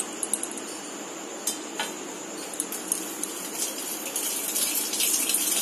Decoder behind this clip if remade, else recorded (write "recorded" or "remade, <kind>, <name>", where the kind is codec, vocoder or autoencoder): recorded